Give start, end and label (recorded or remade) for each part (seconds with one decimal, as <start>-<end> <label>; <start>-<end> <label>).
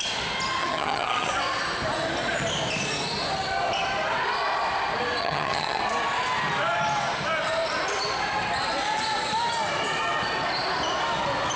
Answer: 0.0-0.6 recorded; 0.6-1.3 remade; 1.3-5.2 recorded; 5.2-5.8 remade; 5.8-11.6 recorded